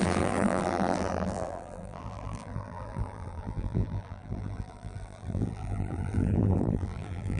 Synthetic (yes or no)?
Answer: yes